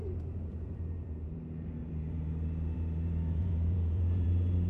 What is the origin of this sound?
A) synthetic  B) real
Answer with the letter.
A